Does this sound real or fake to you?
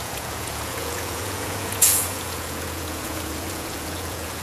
fake